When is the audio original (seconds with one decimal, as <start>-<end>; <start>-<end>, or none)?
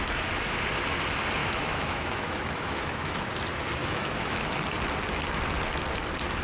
0.0-1.4; 3.2-3.8; 4.5-6.4